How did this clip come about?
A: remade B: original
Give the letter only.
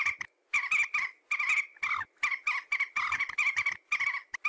B